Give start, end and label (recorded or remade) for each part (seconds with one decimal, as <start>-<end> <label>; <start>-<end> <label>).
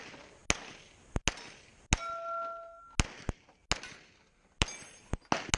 0.0-5.6 recorded